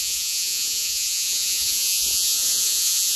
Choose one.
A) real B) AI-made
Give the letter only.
B